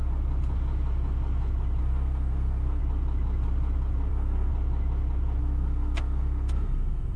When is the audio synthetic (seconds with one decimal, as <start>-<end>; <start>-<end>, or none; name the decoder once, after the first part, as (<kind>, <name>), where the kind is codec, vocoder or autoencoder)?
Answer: 1.8-2.8 (codec, SNAC); 4.1-4.5; 5.4-7.2